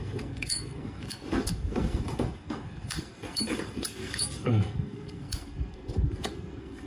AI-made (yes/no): yes